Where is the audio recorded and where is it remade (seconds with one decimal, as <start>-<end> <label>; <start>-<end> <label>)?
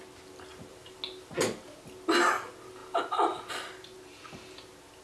0.0-0.5 recorded; 0.5-1.0 remade; 1.0-5.0 recorded